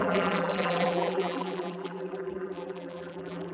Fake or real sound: fake